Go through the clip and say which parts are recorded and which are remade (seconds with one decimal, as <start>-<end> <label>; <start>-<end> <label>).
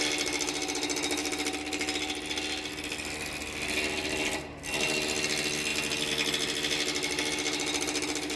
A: 0.0-8.4 recorded